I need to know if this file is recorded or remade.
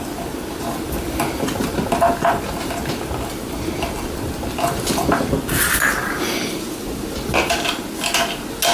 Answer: recorded